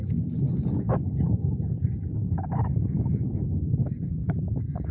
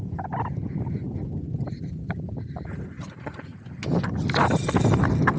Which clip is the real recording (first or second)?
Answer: second